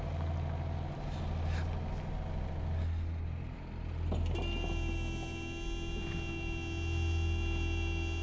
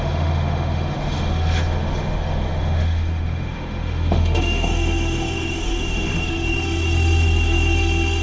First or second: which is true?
first